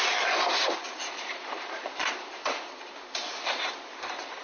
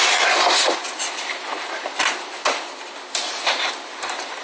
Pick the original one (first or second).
second